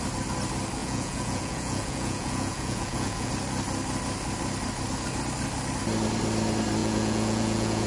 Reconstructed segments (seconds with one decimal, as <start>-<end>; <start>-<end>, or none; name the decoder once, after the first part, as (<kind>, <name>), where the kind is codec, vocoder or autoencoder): 0.8-3.3 (vocoder, Vocos); 6.8-7.9